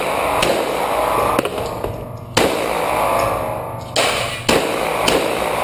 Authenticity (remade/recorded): recorded